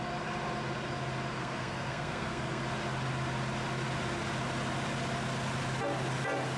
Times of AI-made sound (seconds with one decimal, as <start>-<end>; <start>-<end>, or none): 1.4-2.6